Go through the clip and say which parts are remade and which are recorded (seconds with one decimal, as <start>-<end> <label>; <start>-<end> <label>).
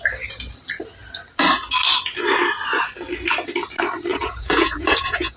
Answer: 0.0-4.1 recorded; 4.1-5.4 remade